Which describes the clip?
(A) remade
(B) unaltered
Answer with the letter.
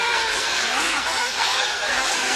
A